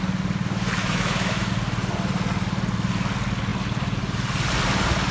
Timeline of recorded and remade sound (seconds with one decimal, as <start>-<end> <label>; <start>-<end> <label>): 0.0-0.8 recorded; 0.8-1.5 remade; 1.5-5.1 recorded